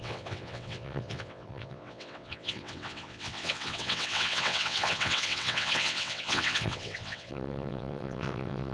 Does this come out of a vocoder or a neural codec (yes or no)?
yes